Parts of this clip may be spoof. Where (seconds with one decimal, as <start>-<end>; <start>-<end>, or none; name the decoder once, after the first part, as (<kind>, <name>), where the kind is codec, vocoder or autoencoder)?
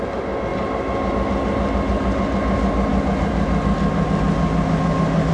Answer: none